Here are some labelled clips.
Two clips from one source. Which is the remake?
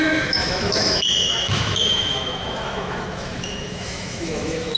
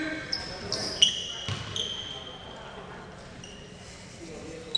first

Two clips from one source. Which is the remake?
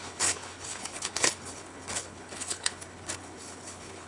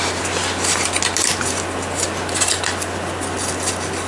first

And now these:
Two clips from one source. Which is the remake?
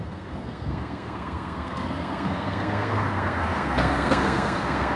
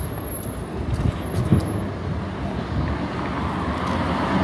first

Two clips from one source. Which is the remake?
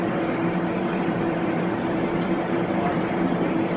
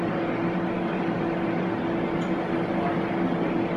first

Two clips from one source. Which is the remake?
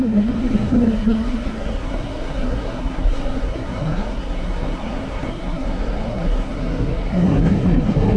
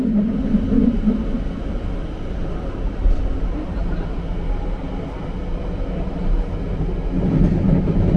first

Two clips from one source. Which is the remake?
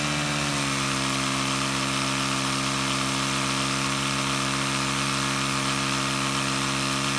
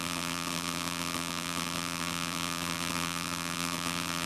second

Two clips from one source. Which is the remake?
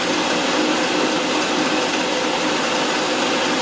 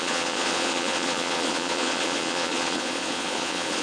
second